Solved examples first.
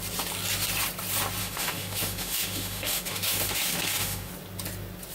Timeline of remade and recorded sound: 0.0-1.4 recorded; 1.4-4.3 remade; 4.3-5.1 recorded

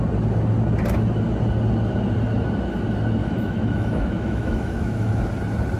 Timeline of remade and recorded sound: 0.0-3.2 recorded; 3.2-5.2 remade; 5.2-5.8 recorded

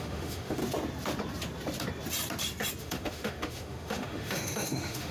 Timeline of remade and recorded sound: 0.0-0.6 remade; 0.6-2.8 recorded; 2.8-5.1 remade

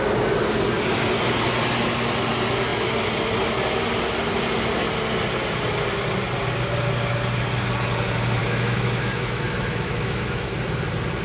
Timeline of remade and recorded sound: 0.0-8.4 recorded; 8.4-10.5 remade; 10.5-11.2 recorded

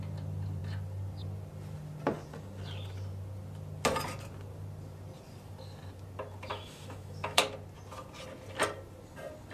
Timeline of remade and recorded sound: 0.0-6.5 recorded; 6.5-7.4 remade; 7.4-9.5 recorded